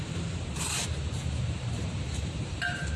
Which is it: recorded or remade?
remade